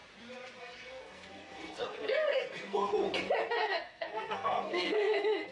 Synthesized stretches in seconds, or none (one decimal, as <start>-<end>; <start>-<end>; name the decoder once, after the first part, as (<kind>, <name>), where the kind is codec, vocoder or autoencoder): 0.6-2.9 (codec, SNAC); 3.5-5.5